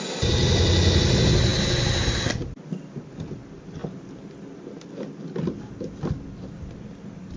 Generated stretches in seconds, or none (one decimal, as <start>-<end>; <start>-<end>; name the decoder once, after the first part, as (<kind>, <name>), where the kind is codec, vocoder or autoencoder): none